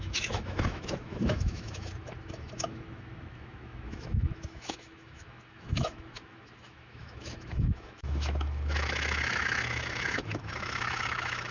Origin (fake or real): fake